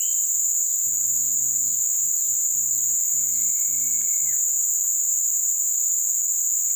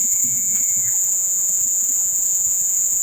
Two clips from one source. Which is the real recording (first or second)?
first